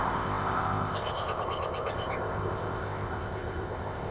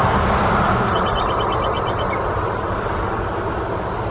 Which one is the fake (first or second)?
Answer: first